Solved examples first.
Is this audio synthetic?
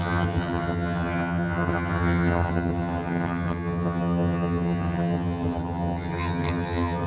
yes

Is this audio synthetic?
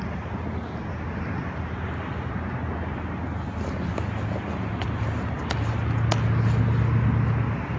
no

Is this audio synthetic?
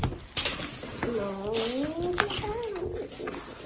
no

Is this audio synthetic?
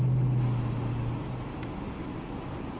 no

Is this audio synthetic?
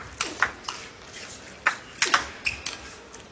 no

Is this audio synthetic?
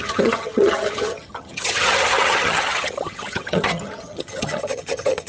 yes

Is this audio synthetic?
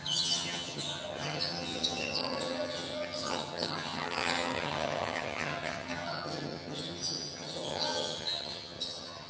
yes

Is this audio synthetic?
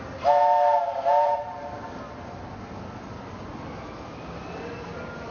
no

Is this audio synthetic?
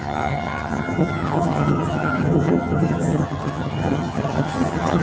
yes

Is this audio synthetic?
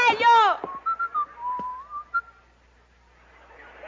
no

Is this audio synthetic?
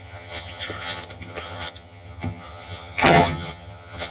yes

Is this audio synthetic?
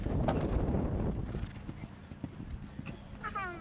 no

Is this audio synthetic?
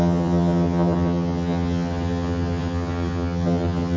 yes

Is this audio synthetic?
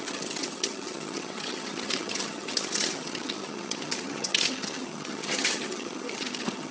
yes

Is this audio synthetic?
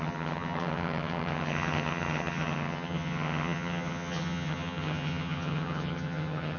yes